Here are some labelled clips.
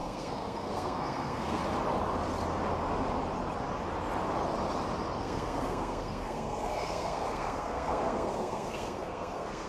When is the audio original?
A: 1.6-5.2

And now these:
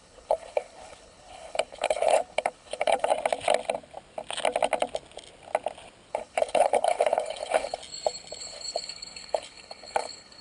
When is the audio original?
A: 3.1-6.1; 7.8-8.4

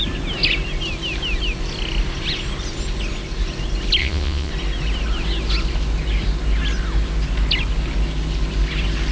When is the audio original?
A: 0.0-4.0; 4.5-9.1

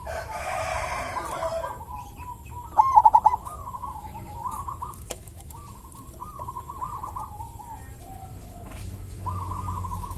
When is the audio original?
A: 0.7-3.3; 5.8-8.2

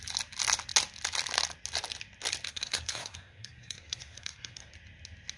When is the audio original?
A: 0.0-2.5; 4.7-5.4